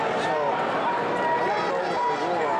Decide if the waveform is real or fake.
real